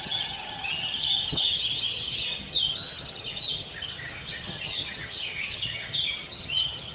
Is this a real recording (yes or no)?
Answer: no